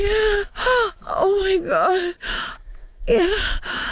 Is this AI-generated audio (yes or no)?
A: yes